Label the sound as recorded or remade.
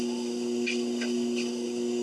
recorded